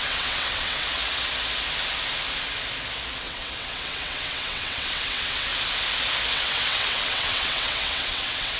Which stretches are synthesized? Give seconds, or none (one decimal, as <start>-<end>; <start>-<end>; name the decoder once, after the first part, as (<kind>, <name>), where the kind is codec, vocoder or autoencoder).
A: 0.0-1.0 (vocoder, WaveNeXt); 3.2-5.5; 6.3-8.6